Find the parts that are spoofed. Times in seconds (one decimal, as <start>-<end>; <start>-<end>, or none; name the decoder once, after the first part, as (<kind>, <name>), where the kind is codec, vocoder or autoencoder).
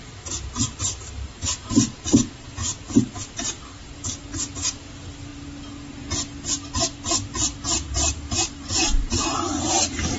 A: 7.8-9.6 (vocoder, BigVGAN v2)